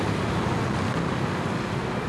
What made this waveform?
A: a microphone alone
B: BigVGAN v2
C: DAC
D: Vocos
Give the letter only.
A